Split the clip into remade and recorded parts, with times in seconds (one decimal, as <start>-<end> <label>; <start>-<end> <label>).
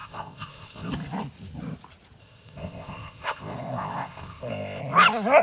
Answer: 0.0-0.9 remade; 0.9-2.2 recorded; 2.2-4.8 remade; 4.8-5.4 recorded